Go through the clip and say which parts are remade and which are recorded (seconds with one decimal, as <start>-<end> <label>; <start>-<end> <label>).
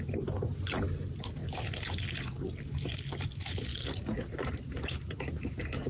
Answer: 0.0-3.7 recorded; 3.7-5.9 remade